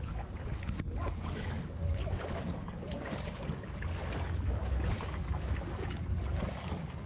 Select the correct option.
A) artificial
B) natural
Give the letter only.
A